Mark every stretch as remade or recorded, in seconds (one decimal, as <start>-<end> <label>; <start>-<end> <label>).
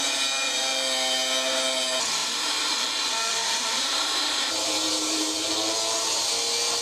0.0-2.2 recorded; 2.2-2.8 remade; 2.8-3.3 recorded; 3.3-5.5 remade; 5.5-6.8 recorded